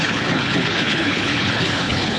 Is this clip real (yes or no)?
no